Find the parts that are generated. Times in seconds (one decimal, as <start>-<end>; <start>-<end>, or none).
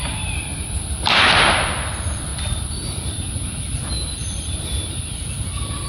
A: 0.0-5.9